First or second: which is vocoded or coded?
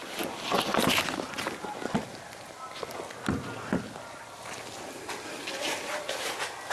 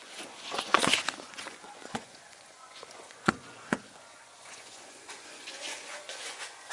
second